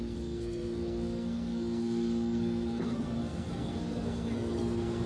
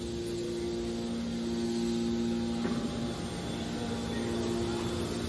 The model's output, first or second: first